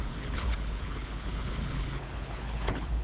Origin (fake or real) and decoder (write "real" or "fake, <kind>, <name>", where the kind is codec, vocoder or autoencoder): fake, codec, HILCodec